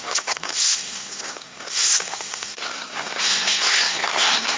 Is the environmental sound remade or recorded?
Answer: remade